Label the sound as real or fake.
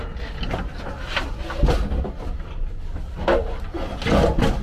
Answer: real